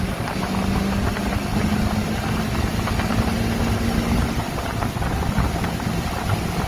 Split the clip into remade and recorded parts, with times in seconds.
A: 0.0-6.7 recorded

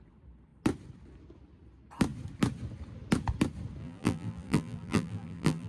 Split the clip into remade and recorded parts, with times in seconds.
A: 0.0-3.8 recorded; 3.8-5.7 remade

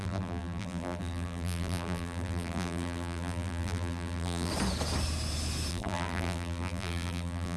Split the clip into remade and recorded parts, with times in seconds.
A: 0.0-4.5 remade; 4.5-5.7 recorded; 5.7-7.6 remade

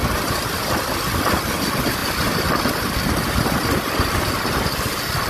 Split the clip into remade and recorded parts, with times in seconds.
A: 0.0-5.3 recorded

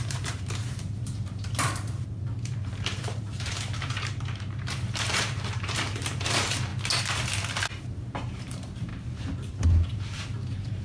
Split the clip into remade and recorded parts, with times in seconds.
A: 0.0-6.7 remade; 6.7-7.8 recorded; 7.8-8.9 remade; 8.9-9.5 recorded; 9.5-10.8 remade